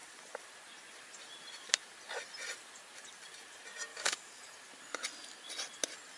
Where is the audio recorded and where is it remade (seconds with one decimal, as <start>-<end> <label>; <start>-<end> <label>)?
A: 0.0-3.9 recorded; 3.9-4.4 remade; 4.4-6.2 recorded